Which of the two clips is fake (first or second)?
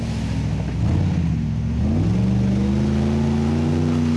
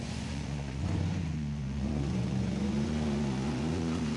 second